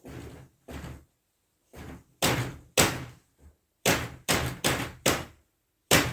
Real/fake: real